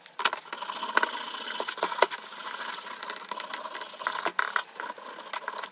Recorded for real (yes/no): yes